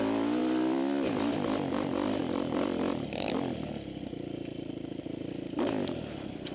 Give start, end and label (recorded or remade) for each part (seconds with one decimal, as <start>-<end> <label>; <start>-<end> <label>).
0.0-2.2 recorded; 2.2-5.3 remade; 5.3-6.5 recorded